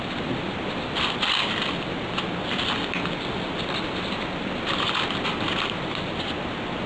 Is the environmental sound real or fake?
real